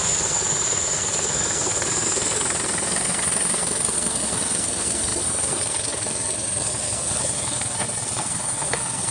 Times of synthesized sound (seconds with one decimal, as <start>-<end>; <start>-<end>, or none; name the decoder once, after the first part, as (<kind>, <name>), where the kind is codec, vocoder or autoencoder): 0.0-9.1 (codec, SNAC)